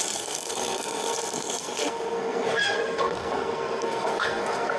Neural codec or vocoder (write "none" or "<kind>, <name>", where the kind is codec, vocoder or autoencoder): codec, SNAC